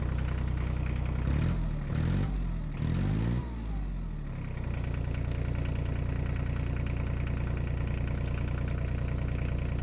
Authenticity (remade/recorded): recorded